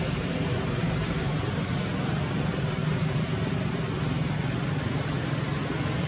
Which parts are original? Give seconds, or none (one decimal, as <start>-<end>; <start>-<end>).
1.9-6.1